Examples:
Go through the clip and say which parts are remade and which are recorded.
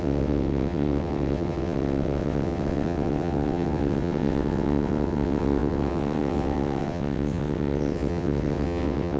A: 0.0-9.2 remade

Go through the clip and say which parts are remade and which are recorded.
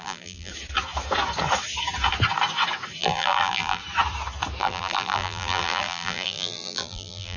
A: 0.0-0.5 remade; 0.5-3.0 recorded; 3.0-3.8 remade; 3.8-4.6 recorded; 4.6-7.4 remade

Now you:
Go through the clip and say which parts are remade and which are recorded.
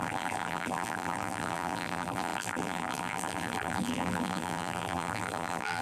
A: 0.0-5.8 remade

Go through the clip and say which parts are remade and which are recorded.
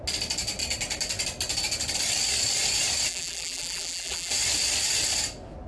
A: 0.0-3.1 recorded; 3.1-4.3 remade; 4.3-5.7 recorded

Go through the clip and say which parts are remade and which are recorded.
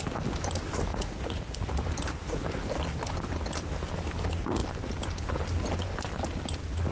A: 0.0-0.9 recorded; 0.9-1.7 remade; 1.7-6.9 recorded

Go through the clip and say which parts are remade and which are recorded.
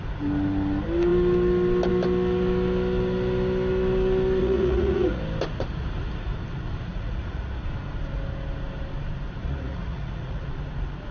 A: 0.0-4.4 recorded; 4.4-5.2 remade; 5.2-6.9 recorded; 6.9-7.5 remade; 7.5-9.4 recorded; 9.4-10.4 remade; 10.4-11.1 recorded